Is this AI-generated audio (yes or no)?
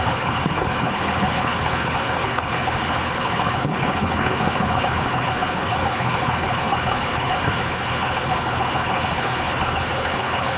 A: yes